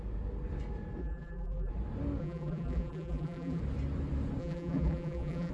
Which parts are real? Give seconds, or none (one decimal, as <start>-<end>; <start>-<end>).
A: 0.0-1.0; 1.7-2.2; 3.6-4.4